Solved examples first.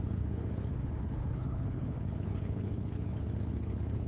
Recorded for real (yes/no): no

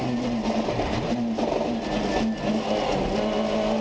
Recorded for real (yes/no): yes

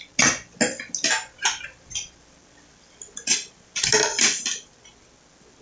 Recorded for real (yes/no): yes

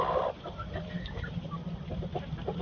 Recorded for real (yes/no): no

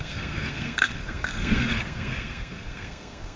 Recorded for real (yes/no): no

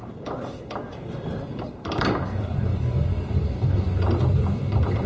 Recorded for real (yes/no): no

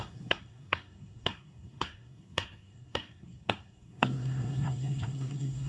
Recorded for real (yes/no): no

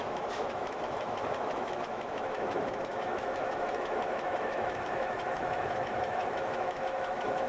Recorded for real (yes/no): no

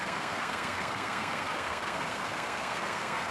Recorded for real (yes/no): no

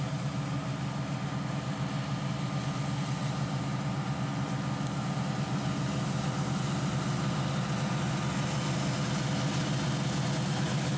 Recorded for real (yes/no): yes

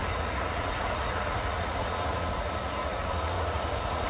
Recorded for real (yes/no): no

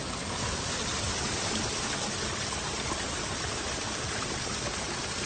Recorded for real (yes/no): yes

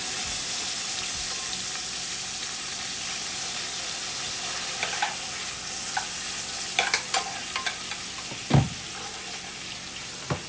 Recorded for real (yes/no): yes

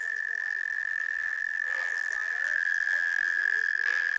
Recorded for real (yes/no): no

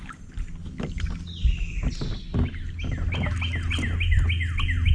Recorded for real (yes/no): yes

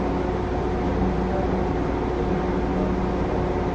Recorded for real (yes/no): yes